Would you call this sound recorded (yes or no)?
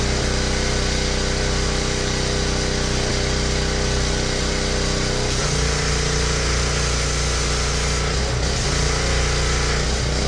yes